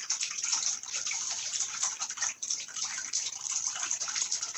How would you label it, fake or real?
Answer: fake